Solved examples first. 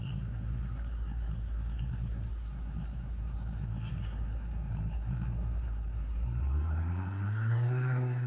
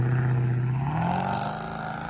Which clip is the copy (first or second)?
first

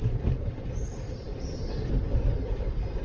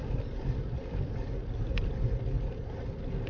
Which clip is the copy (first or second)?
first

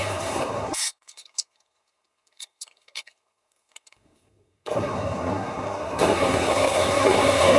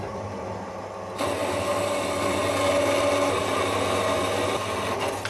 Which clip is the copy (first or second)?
first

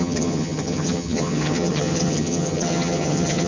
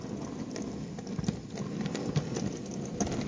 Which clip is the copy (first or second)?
first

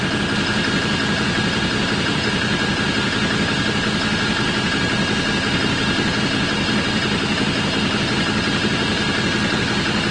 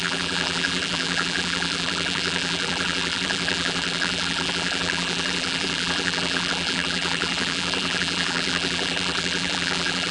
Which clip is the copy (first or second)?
second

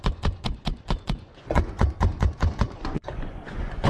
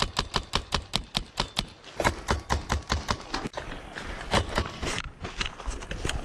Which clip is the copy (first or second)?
first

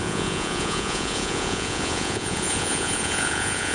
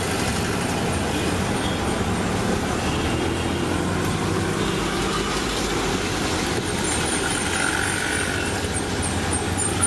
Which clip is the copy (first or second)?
first